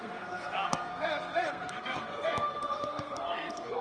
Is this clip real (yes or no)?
no